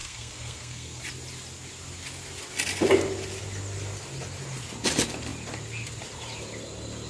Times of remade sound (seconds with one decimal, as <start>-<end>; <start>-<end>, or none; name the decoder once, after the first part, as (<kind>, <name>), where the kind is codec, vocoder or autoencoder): 0.0-1.0 (codec, SNAC)